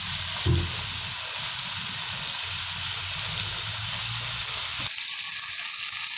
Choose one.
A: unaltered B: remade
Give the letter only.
A